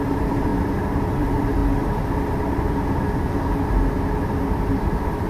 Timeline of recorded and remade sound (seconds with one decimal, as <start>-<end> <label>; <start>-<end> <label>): 0.0-0.5 remade; 0.5-1.1 recorded; 1.1-1.6 remade; 1.6-4.4 recorded; 4.4-5.3 remade